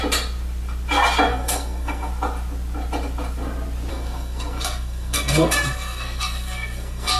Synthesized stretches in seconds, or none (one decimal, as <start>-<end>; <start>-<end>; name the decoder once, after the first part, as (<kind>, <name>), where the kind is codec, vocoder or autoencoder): 1.3-2.1 (codec, SNAC); 3.9-7.2